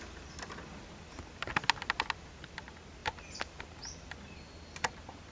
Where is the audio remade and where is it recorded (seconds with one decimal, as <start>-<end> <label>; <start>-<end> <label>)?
0.0-5.3 recorded